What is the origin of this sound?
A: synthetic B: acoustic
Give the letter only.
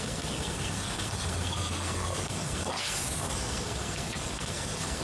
A